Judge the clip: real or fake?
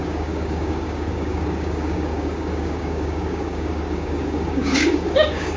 fake